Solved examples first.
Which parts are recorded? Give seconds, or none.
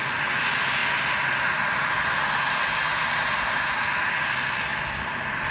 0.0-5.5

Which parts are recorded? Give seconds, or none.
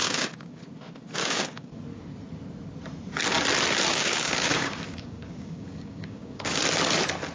0.6-1.2; 1.7-3.9; 6.6-7.3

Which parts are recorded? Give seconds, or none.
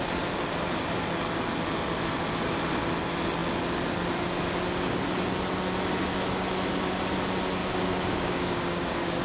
0.0-7.6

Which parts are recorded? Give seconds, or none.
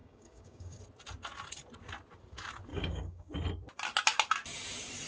0.8-2.7; 3.3-5.1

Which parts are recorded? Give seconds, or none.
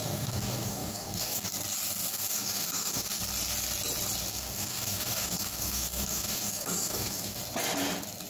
1.5-2.1; 3.2-4.3; 7.4-8.3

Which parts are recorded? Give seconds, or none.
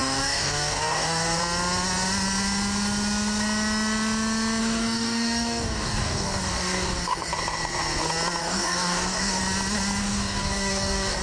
1.4-4.6; 7.3-8.4; 9.4-10.0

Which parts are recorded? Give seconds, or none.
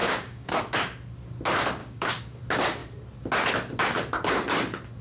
0.6-1.8; 2.4-5.0